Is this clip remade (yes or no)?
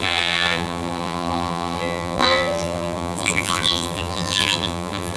yes